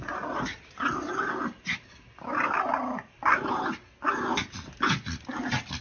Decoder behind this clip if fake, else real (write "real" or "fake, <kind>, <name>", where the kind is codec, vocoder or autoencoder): real